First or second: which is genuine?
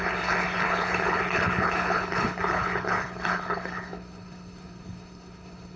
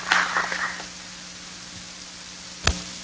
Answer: second